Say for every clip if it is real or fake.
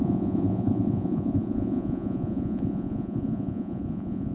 fake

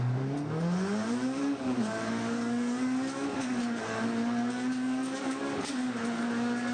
fake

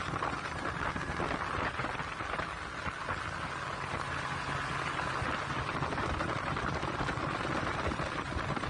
real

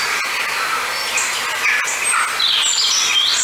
real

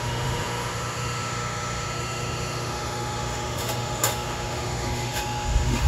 fake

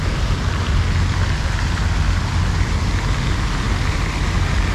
real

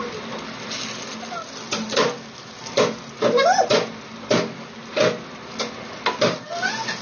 real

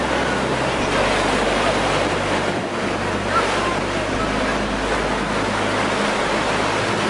real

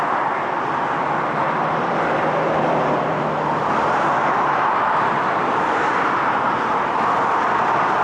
fake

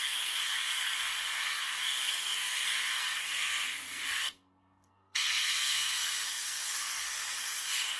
fake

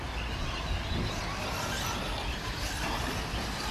real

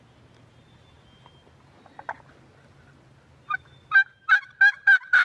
real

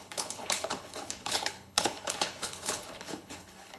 fake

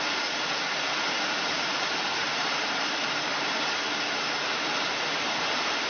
real